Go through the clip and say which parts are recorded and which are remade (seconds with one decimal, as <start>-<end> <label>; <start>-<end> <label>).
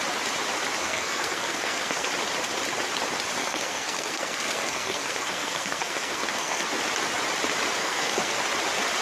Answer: 0.0-0.8 recorded; 0.8-2.1 remade; 2.1-3.4 recorded; 3.4-6.7 remade; 6.7-7.8 recorded; 7.8-8.4 remade; 8.4-9.0 recorded